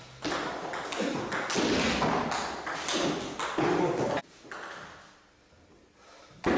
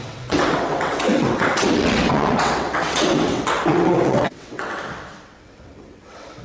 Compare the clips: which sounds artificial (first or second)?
second